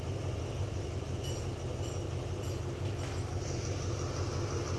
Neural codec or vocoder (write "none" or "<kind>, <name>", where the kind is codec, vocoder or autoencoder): none